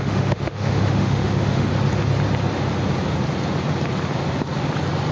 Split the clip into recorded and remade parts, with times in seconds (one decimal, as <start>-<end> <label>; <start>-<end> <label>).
0.0-1.7 remade; 1.7-5.1 recorded